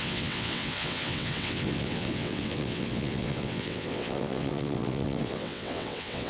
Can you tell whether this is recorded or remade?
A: remade